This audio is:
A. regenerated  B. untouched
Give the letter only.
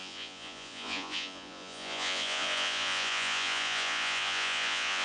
A